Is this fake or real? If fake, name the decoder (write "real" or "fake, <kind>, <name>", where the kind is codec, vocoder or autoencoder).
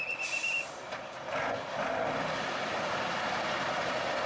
real